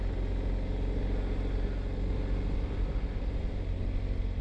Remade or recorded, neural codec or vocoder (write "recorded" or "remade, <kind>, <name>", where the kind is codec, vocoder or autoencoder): recorded